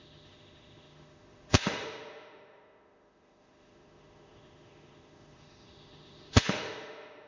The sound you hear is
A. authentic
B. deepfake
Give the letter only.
B